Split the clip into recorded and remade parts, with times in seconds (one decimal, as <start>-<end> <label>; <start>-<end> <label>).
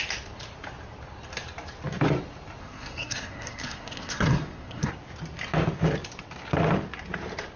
0.0-2.6 recorded; 2.6-4.9 remade; 4.9-7.6 recorded